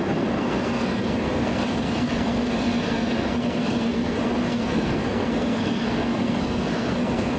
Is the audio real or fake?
fake